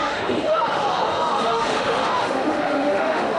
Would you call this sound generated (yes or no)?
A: yes